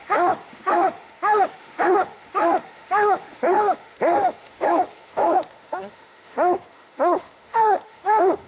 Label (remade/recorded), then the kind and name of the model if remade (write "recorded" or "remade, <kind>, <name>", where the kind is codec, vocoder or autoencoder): remade, autoencoder, DAC-VAE